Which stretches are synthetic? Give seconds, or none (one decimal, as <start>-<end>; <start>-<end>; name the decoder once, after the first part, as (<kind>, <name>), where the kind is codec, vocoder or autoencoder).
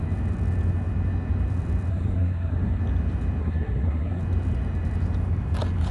1.9-2.8 (codec, SNAC); 3.4-4.2